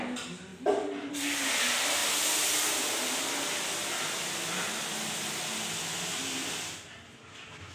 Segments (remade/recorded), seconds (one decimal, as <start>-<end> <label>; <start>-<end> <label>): 0.0-7.7 recorded